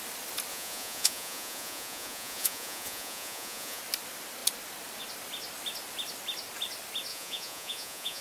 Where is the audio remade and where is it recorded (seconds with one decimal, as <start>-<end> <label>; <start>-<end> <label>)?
0.0-0.5 recorded; 0.5-3.8 remade; 3.8-7.1 recorded; 7.1-8.2 remade